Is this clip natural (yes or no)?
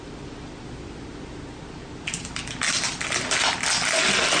yes